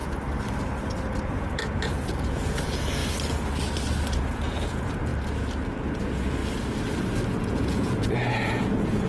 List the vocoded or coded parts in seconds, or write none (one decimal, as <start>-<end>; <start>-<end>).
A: 1.2-3.0; 4.1-5.1; 5.8-6.4; 7.4-9.1